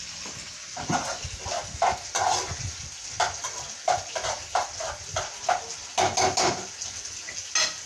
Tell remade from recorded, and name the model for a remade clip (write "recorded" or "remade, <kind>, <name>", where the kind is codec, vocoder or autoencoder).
recorded